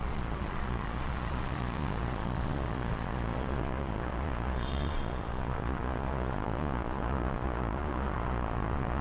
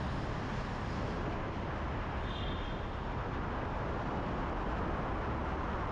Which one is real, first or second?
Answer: second